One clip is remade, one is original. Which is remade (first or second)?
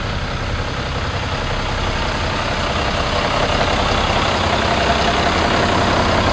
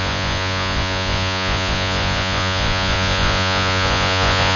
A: second